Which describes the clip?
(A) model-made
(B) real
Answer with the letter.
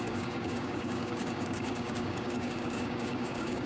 A